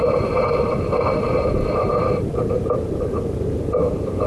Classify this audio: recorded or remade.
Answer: remade